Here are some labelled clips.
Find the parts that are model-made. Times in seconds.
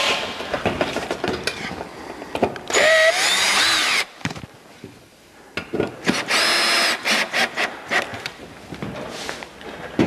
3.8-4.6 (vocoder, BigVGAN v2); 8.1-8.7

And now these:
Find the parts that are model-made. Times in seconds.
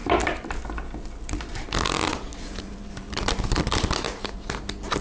0.0-0.6 (vocoder, BigVGAN v2); 2.3-4.6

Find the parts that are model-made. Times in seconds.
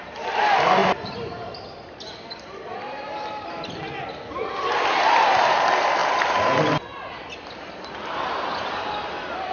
0.0-6.0 (vocoder, BigVGAN v2); 7.3-9.5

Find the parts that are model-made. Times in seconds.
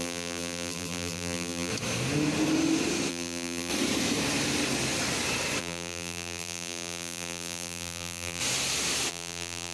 0.0-1.7 (vocoder, BigVGAN v2); 3.1-3.7; 5.6-8.4; 9.1-9.7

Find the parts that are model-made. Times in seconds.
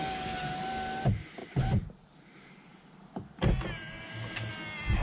1.4-3.0 (vocoder, BigVGAN v2); 3.8-4.5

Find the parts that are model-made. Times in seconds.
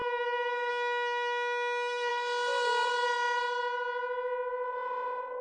0.0-0.7 (vocoder, BigVGAN v2)